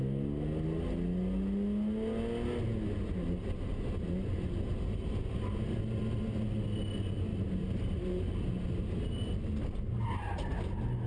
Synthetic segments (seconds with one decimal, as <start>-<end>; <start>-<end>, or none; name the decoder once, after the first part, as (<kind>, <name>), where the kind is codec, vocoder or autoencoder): 7.3-8.2 (vocoder, BigVGAN v2)